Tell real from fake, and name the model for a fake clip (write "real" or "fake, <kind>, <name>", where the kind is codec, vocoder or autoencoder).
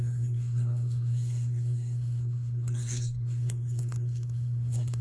fake, codec, SNAC